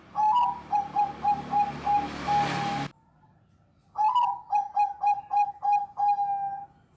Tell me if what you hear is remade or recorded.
recorded